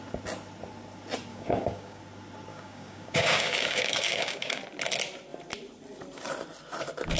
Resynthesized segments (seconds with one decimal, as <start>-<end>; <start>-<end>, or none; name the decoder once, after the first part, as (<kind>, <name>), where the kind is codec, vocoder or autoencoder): 1.3-2.0 (codec, DAC); 2.5-4.6